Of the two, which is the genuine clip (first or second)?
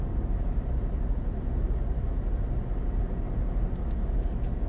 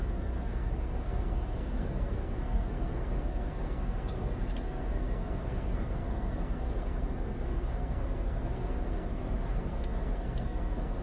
first